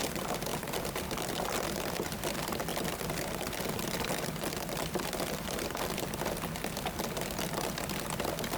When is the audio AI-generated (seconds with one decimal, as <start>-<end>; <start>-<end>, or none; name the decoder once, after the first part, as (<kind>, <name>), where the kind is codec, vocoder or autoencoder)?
0.5-1.9 (vocoder, BigVGAN v2); 2.7-6.4